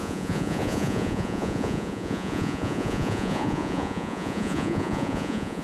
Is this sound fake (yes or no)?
yes